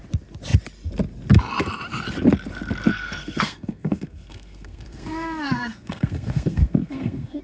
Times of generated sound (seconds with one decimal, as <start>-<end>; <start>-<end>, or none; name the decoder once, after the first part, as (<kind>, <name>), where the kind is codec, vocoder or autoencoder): 2.9-7.4 (codec, SNAC)